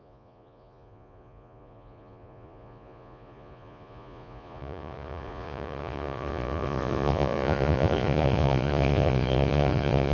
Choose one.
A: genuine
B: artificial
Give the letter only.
B